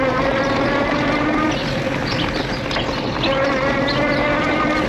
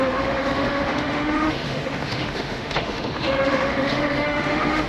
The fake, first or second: second